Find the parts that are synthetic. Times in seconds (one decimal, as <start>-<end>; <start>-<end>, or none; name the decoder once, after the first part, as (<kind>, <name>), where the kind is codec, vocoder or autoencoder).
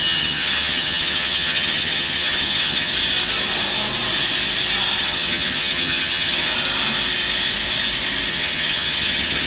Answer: 0.0-2.9 (vocoder, HiFi-GAN); 5.0-6.5; 8.3-9.5